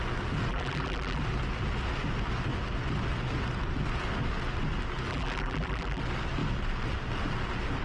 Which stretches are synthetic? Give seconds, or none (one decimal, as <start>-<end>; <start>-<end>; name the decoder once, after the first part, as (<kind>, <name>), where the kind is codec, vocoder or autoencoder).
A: 0.5-1.2 (vocoder, BigVGAN v2); 5.1-6.0